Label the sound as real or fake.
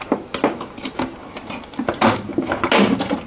real